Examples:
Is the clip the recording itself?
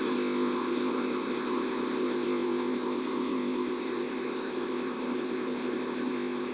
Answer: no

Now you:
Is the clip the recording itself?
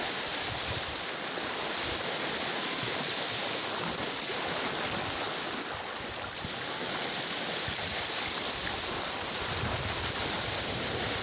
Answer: yes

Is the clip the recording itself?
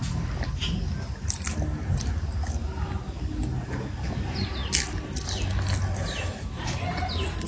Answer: yes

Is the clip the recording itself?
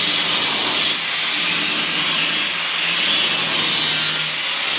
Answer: yes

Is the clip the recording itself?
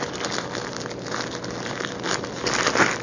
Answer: yes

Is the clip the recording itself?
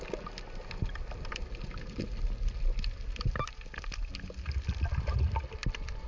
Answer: yes